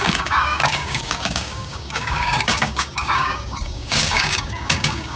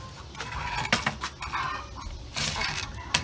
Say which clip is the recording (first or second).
second